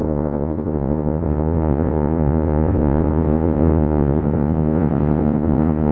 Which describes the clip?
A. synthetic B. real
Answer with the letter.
A